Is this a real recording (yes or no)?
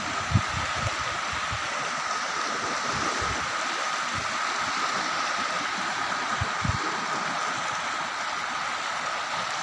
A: yes